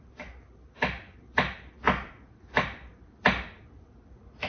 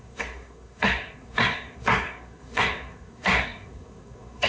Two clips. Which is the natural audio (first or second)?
first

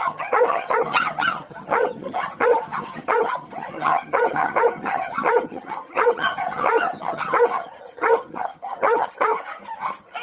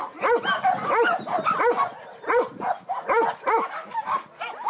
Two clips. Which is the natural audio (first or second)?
second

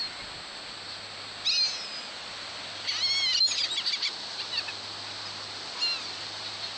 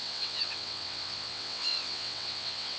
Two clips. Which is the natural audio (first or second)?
first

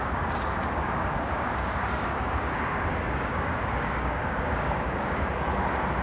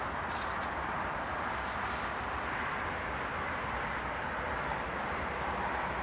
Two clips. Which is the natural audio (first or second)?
second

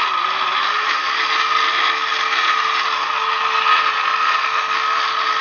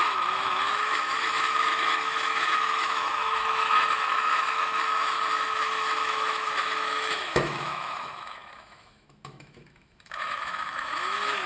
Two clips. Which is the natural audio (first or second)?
first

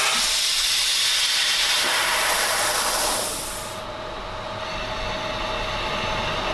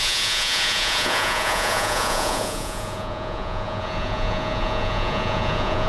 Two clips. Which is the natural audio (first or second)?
first